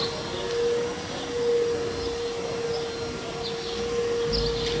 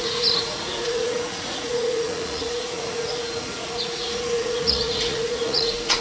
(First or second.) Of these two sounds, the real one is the first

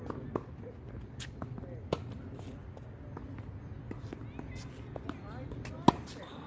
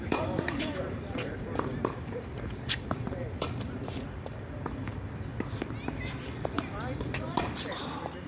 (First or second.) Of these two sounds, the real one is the first